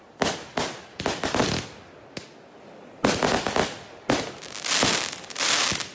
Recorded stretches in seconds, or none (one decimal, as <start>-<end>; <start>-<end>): 0.0-5.9